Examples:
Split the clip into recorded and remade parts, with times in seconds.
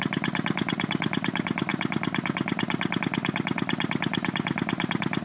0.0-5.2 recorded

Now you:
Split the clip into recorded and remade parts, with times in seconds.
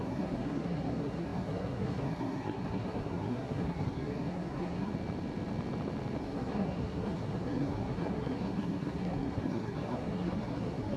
0.0-4.9 remade; 4.9-6.2 recorded; 6.2-11.0 remade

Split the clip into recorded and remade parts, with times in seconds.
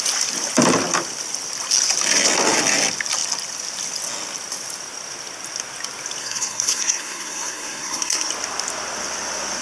0.0-6.2 recorded; 6.2-8.3 remade; 8.3-9.6 recorded